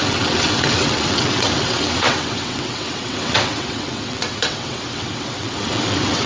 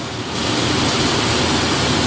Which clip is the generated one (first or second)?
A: first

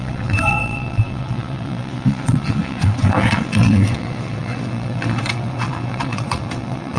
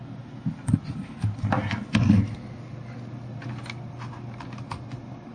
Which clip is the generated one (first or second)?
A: first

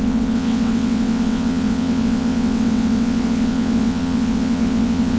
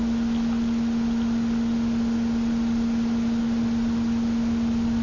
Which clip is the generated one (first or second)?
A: first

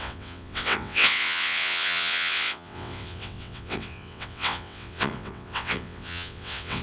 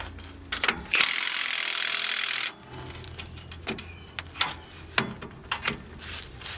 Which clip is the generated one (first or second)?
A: first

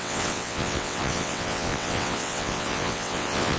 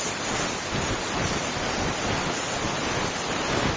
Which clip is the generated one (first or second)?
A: first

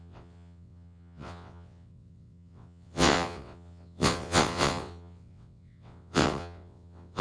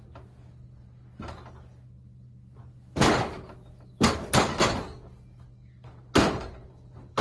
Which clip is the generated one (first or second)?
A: first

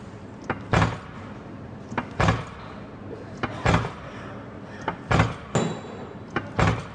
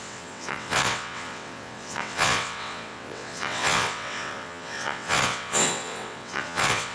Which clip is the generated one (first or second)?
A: second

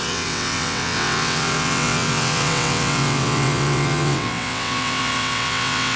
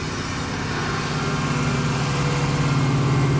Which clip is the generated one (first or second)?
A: first